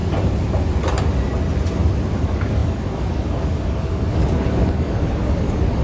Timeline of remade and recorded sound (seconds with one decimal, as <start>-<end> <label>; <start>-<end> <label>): 0.0-2.2 recorded; 2.2-5.8 remade